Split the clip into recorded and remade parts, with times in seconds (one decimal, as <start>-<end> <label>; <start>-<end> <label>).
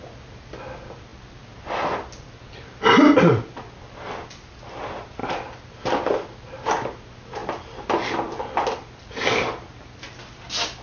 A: 0.0-10.8 recorded